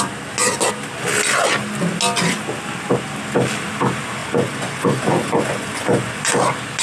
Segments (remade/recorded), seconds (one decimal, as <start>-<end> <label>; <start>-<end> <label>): 0.0-4.2 recorded; 4.2-6.2 remade; 6.2-6.8 recorded